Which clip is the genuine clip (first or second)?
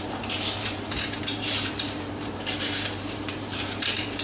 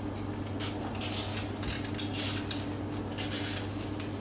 second